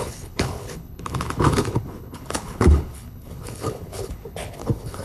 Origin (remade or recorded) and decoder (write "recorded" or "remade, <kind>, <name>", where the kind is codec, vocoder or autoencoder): remade, codec, HILCodec